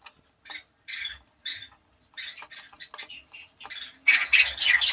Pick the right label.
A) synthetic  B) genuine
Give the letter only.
B